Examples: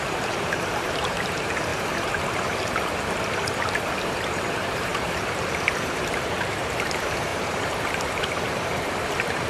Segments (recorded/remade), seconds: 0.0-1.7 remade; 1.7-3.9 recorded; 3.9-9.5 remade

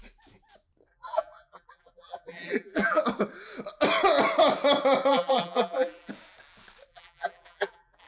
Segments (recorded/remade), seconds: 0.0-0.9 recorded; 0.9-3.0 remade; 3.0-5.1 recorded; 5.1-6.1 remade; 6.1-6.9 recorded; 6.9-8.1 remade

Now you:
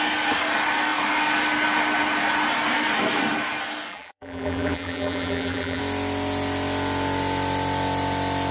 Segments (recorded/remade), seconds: 0.0-3.9 recorded; 3.9-5.8 remade; 5.8-8.5 recorded

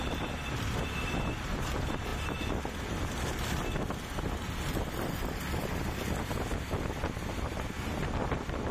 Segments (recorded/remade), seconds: 0.0-5.6 remade; 5.6-8.7 recorded

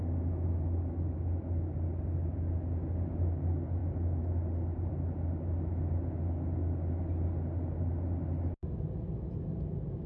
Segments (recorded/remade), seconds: 0.0-10.1 recorded

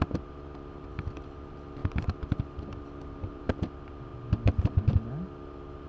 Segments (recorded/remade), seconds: 0.0-1.8 recorded; 1.8-2.4 remade; 2.4-3.0 recorded; 3.0-3.5 remade; 3.5-5.9 recorded

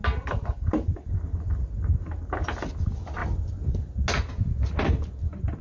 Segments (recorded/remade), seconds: 0.0-5.6 recorded